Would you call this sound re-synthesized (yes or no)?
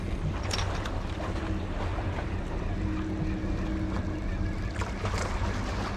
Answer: no